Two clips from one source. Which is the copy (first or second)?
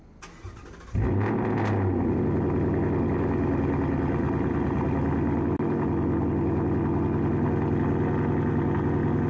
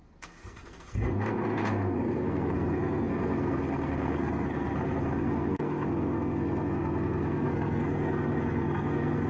second